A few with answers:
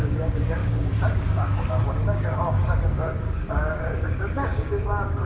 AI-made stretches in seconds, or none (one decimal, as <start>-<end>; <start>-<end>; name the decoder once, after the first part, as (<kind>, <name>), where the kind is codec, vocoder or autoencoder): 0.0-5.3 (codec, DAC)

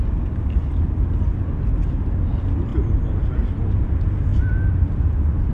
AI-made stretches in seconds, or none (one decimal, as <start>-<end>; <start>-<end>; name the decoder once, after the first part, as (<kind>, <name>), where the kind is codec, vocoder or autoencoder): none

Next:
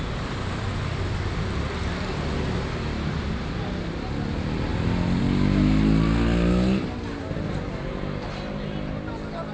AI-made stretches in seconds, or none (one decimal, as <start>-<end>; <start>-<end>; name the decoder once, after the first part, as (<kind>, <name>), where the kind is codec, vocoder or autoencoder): none